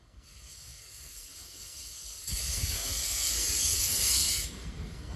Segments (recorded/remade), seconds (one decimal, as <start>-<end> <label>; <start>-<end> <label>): 0.0-5.2 remade